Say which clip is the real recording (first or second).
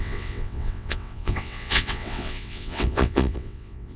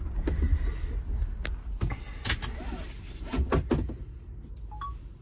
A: second